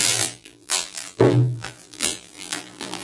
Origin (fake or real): fake